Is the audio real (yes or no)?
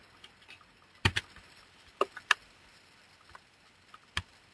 yes